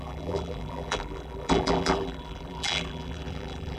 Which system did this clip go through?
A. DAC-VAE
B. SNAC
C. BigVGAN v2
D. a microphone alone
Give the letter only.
C